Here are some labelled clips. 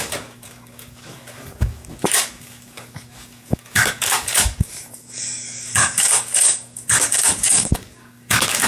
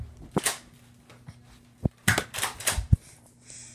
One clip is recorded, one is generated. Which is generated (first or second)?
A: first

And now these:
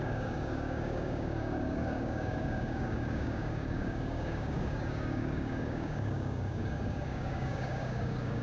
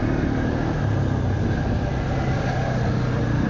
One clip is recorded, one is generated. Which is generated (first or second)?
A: first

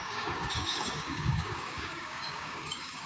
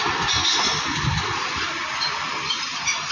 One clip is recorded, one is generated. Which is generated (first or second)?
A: first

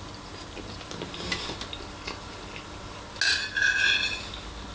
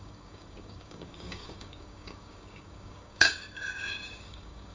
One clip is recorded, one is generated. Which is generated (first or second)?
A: second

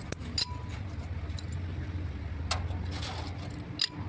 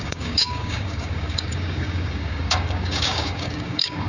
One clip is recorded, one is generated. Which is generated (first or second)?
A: second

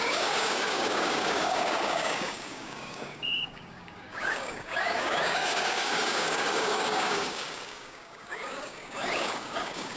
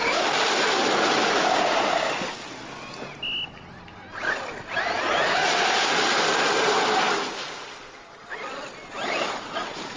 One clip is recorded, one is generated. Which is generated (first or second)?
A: first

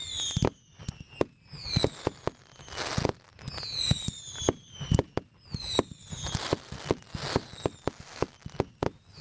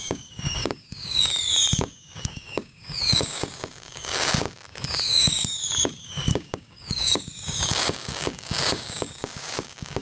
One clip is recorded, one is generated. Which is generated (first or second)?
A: second